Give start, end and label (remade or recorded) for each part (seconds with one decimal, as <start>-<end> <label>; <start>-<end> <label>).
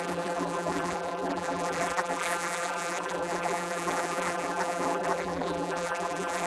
0.0-6.5 remade